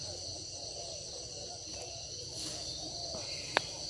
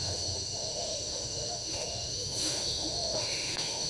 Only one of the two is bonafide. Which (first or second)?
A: first